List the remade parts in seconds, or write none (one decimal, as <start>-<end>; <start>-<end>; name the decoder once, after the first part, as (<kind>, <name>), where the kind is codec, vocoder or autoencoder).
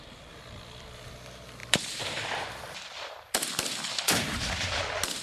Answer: 1.6-4.7 (vocoder, BigVGAN v2)